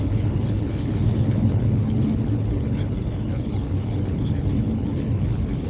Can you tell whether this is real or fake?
fake